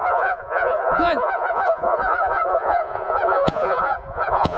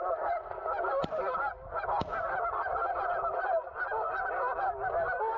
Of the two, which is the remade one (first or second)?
first